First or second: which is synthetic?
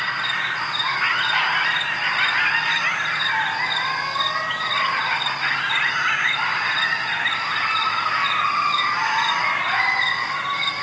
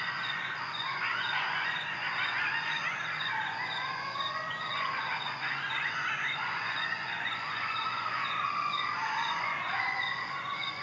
second